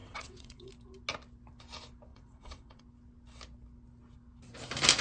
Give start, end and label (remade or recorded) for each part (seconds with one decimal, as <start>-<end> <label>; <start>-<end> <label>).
0.0-0.7 remade; 0.7-2.1 recorded; 2.1-2.8 remade; 2.8-5.0 recorded